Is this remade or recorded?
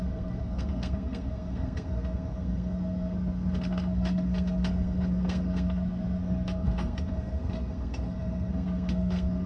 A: remade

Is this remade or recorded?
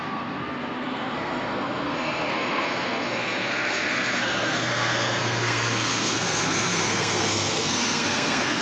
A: remade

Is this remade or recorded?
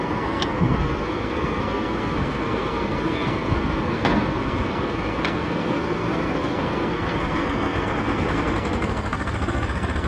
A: remade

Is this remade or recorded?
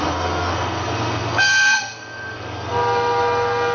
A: remade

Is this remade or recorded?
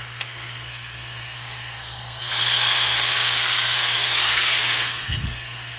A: remade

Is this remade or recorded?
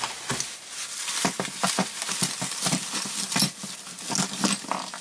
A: recorded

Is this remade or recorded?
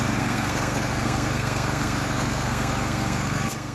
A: remade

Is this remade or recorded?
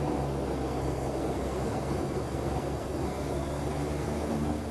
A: remade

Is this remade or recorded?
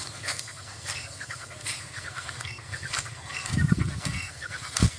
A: remade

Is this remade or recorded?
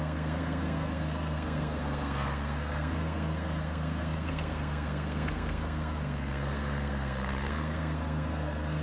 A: remade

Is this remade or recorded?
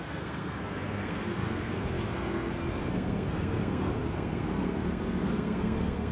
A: remade